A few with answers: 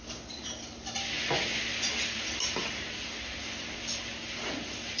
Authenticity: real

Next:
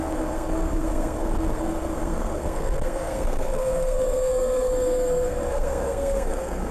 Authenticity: fake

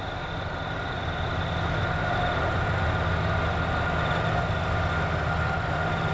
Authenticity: real